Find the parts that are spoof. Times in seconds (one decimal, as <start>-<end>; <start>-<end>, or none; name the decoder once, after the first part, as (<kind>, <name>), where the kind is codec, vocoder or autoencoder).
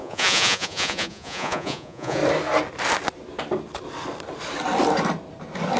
0.0-2.2 (vocoder, Vocos)